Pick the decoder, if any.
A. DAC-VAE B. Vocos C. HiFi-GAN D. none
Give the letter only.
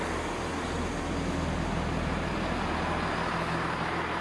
D